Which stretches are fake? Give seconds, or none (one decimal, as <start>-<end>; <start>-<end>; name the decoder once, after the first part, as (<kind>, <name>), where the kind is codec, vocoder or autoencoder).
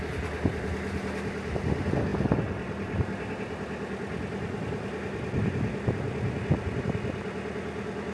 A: none